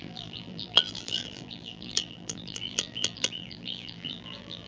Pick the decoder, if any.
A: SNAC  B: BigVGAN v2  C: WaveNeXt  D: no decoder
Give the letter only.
B